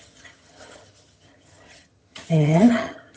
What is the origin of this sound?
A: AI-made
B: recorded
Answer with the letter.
A